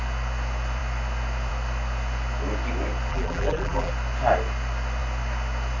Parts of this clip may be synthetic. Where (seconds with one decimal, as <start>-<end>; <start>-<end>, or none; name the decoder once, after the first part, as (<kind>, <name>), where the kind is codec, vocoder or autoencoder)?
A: 3.1-3.9 (vocoder, BigVGAN v2)